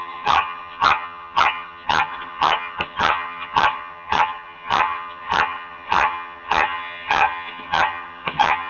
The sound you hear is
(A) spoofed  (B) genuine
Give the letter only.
A